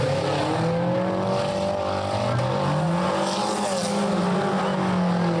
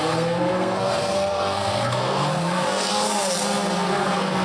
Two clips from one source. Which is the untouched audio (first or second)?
first